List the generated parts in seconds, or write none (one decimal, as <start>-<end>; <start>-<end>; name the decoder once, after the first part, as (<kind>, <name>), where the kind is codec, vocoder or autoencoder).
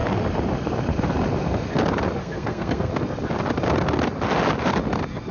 2.2-2.9 (codec, SNAC)